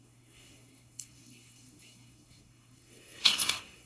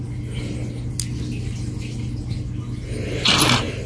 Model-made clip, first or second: first